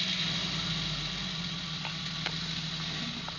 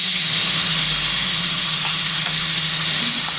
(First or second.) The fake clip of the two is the second